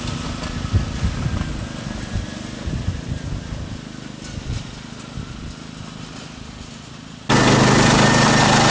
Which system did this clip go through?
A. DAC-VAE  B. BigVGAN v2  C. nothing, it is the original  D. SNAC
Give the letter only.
C